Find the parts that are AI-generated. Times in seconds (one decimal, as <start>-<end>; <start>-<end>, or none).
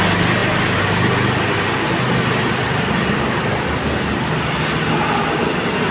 none